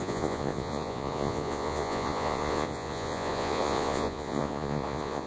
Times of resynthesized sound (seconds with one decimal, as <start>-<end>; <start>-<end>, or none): 0.0-5.3